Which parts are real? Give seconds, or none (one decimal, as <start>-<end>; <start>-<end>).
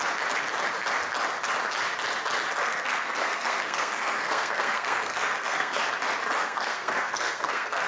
0.0-2.6; 5.8-6.4